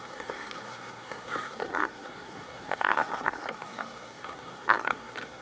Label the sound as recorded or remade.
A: remade